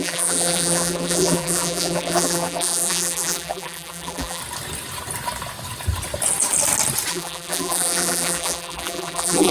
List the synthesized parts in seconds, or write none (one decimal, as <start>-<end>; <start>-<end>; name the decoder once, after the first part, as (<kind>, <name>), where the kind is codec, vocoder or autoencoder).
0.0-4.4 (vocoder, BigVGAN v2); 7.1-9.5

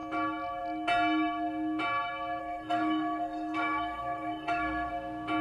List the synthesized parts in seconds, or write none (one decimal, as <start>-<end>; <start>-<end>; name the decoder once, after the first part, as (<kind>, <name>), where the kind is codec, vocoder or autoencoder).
2.4-4.9 (codec, SNAC)

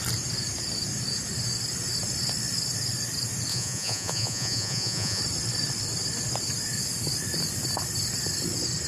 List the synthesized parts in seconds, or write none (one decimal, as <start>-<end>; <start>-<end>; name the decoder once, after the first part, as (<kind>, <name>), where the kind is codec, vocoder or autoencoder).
3.5-5.2 (vocoder, Vocos)

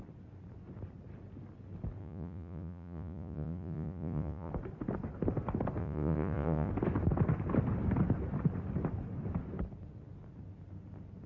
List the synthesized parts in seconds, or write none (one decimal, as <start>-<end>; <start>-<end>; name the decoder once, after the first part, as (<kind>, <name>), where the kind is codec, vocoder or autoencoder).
2.0-4.5 (vocoder, Vocos); 5.8-6.7

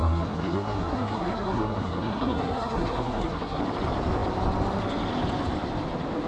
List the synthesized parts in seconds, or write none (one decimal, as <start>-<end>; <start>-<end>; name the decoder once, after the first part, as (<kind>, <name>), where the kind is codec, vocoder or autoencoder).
0.0-3.6 (codec, SNAC)

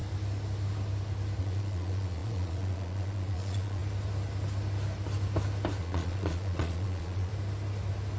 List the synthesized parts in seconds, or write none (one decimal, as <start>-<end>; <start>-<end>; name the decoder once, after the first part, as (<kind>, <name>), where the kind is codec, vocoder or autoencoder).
1.4-3.8 (vocoder, Vocos); 5.8-7.3

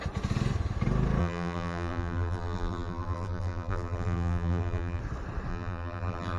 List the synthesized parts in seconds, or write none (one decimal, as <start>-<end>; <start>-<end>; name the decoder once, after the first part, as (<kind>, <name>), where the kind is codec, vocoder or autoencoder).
1.2-5.0 (vocoder, BigVGAN v2); 5.5-6.4

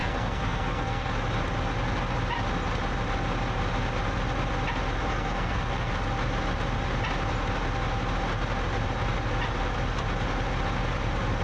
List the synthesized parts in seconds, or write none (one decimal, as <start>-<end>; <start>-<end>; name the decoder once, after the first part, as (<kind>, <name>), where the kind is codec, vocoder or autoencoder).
0.0-1.1 (codec, SNAC); 5.1-5.9